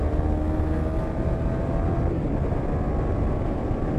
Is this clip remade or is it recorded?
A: recorded